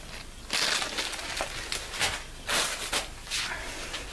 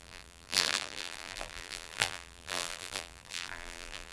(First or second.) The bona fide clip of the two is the first